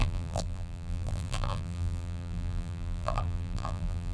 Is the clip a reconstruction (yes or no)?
yes